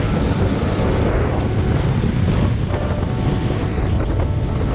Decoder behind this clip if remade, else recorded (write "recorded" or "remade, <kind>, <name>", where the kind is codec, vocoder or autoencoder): recorded